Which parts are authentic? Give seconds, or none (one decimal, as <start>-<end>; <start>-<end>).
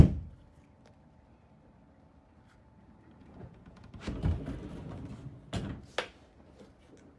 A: 0.0-3.2; 3.9-7.2